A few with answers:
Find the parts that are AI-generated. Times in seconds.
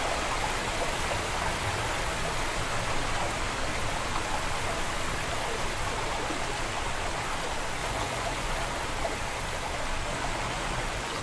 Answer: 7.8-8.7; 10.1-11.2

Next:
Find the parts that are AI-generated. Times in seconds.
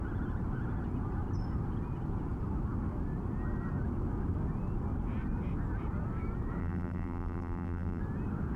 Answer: 6.6-8.0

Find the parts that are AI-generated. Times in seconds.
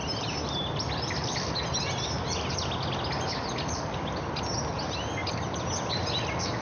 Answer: none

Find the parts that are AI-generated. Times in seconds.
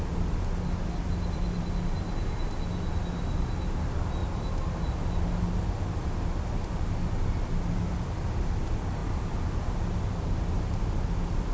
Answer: none